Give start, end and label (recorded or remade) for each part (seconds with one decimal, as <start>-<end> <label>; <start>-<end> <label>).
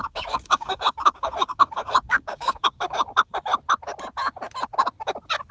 0.0-3.3 remade; 3.3-5.5 recorded